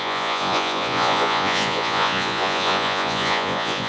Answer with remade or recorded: remade